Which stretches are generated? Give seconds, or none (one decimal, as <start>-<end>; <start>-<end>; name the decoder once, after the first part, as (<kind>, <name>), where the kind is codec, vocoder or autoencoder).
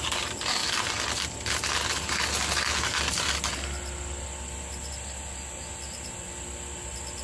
none